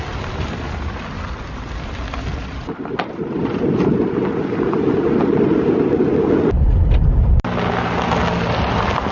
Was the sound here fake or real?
real